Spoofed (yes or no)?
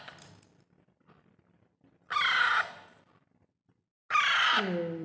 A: no